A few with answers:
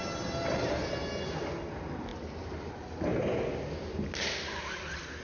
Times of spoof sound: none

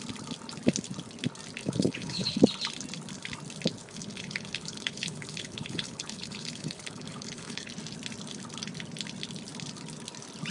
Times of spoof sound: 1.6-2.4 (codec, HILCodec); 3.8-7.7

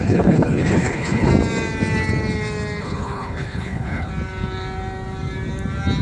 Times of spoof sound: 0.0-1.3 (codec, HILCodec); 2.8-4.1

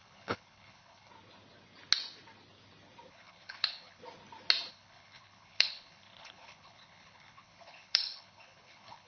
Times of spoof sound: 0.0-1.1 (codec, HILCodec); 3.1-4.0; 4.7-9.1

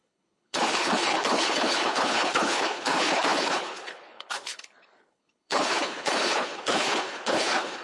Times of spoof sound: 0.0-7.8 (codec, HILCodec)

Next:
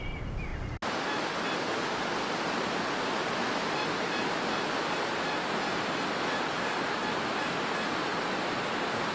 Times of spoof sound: none